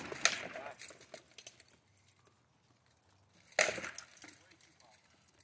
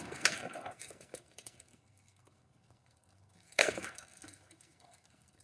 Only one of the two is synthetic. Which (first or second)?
second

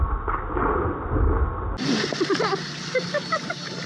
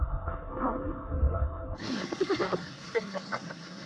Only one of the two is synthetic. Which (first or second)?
second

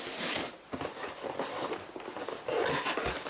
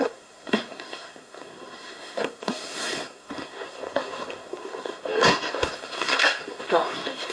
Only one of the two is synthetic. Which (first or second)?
second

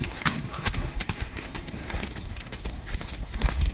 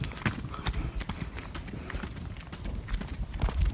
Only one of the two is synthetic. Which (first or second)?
first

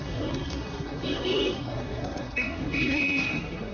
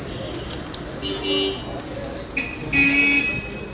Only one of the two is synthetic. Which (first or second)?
first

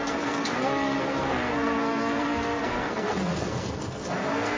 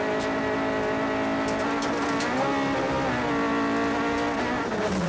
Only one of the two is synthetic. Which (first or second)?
first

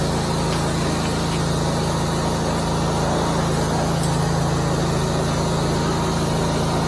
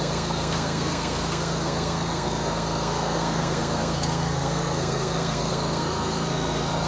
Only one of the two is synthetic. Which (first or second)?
second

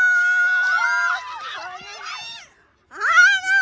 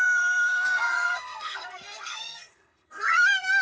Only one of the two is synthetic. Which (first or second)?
second